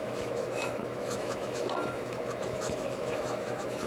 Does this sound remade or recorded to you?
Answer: remade